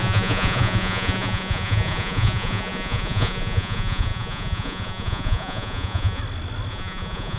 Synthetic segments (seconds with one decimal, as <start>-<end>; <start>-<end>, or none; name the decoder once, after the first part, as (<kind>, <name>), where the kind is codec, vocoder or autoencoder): 0.0-6.2 (vocoder, Vocos); 6.7-7.4